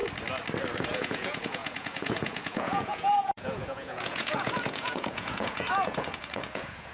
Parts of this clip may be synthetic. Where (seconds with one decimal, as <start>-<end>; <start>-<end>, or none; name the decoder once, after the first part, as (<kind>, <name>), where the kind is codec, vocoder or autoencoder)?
0.8-6.9 (vocoder, Vocos)